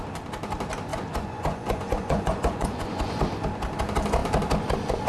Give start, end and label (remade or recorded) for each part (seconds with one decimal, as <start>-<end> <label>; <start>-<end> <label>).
0.0-0.9 recorded; 0.9-3.2 remade; 3.2-5.1 recorded